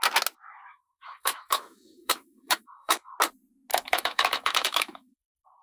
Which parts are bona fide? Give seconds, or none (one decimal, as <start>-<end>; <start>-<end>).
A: 0.0-0.7; 3.1-3.7